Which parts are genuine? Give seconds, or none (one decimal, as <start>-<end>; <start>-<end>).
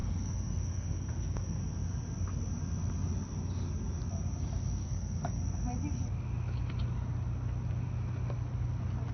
1.6-4.8; 5.4-9.1